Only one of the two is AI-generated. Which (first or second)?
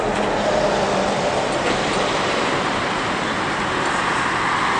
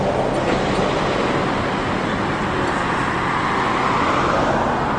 first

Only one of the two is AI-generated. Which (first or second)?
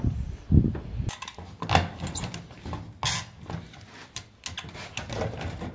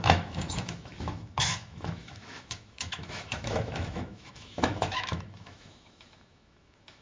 second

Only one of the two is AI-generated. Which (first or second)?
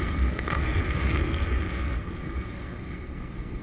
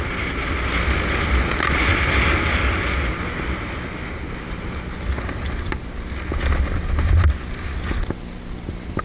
first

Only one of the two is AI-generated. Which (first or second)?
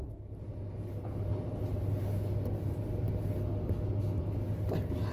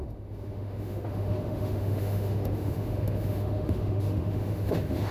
second